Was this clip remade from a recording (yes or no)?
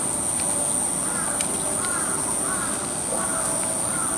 no